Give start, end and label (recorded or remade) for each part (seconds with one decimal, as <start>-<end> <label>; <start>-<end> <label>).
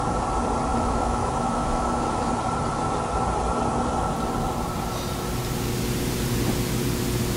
0.0-0.7 recorded; 0.7-2.3 remade; 2.3-7.4 recorded